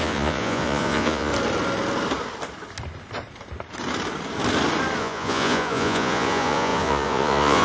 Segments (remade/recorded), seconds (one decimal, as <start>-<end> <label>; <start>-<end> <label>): 0.0-1.3 remade; 1.3-5.0 recorded; 5.0-7.6 remade